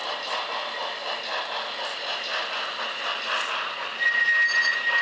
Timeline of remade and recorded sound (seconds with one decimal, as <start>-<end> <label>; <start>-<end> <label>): 0.0-5.0 recorded